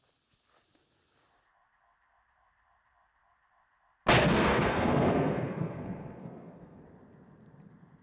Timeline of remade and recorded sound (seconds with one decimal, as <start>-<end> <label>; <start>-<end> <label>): 0.0-4.2 recorded; 4.2-6.8 remade; 6.8-8.0 recorded